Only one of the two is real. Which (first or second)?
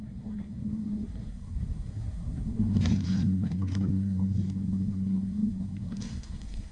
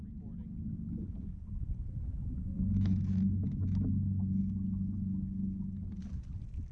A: second